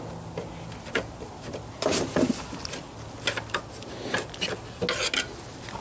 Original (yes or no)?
yes